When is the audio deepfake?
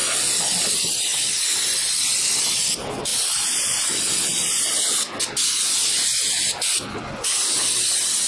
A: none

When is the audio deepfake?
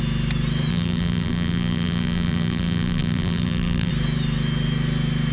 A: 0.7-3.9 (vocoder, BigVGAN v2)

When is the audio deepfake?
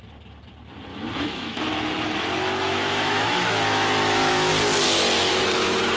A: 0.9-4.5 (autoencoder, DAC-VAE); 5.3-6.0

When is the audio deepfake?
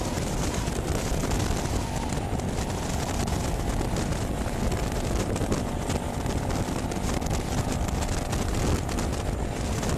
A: none